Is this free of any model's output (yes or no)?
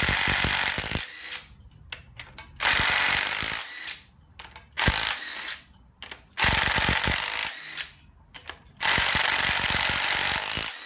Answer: yes